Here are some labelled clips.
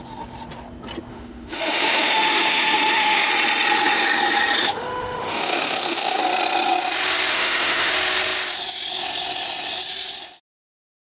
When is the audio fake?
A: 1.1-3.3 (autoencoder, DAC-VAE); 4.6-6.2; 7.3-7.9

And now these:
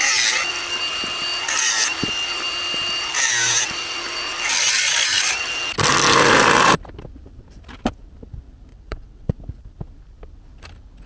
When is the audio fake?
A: 8.7-9.4 (vocoder, WaveNeXt)

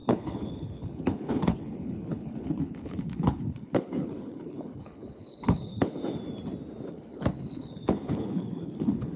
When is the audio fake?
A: 0.0-6.0 (codec, HILCodec); 6.9-9.2